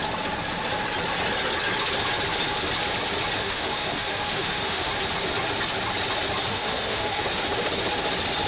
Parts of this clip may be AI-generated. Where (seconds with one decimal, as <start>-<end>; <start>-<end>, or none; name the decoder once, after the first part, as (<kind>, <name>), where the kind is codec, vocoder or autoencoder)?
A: 3.4-4.9 (autoencoder, DAC-VAE); 6.5-7.2